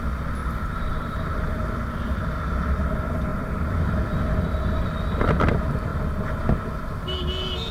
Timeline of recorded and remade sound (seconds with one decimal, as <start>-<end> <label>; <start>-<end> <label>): 0.0-0.4 recorded; 0.4-1.7 remade; 1.7-3.3 recorded; 3.3-3.9 remade; 3.9-7.7 recorded